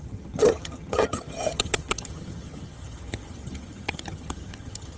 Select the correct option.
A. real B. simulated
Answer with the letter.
B